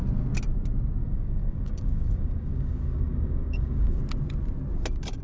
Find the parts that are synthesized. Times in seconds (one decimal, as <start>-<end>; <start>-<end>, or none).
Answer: 1.0-4.0